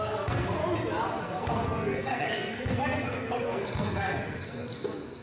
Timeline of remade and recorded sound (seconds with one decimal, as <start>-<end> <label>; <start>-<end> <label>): 0.0-0.6 remade; 0.6-1.2 recorded; 1.2-5.2 remade